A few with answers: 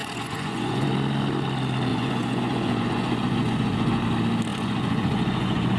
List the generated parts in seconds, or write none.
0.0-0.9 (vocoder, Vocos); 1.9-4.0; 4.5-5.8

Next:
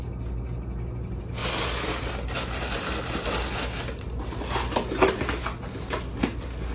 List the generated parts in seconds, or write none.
none

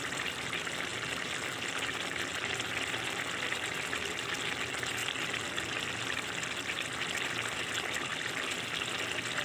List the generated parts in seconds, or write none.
none

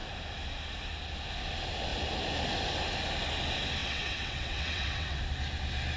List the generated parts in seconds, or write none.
3.8-5.2 (vocoder, WaveNeXt)

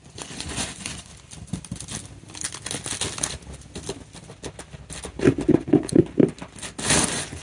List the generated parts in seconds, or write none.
0.0-1.1 (vocoder, Vocos); 5.5-6.0; 7.0-7.4